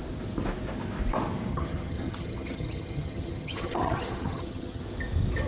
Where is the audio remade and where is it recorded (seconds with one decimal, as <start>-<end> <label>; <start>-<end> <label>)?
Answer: 0.0-1.5 recorded; 1.5-4.8 remade; 4.8-5.5 recorded